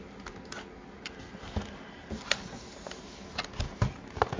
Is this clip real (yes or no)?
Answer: yes